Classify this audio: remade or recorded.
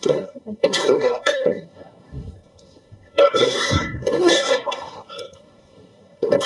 remade